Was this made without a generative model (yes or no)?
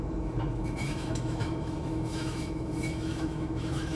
no